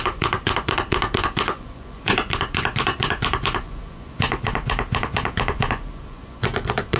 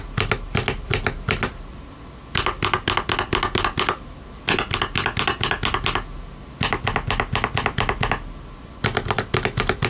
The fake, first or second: first